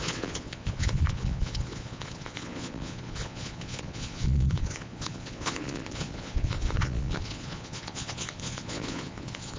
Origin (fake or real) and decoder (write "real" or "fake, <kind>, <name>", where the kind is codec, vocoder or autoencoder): fake, vocoder, Vocos